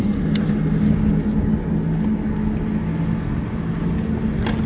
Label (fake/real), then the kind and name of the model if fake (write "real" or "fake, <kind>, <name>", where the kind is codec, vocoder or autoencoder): real